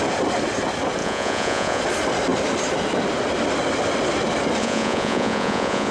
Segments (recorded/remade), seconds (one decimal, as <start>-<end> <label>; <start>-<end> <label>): 0.0-1.0 recorded; 1.0-1.8 remade; 1.8-4.6 recorded; 4.6-5.9 remade